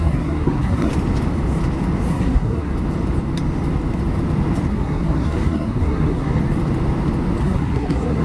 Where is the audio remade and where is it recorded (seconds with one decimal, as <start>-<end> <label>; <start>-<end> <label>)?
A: 0.0-0.9 remade; 0.9-2.1 recorded; 2.1-2.7 remade; 2.7-4.7 recorded; 4.7-6.4 remade; 6.4-7.4 recorded; 7.4-8.2 remade